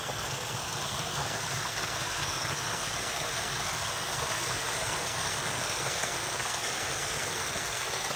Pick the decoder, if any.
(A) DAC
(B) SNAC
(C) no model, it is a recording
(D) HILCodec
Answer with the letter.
B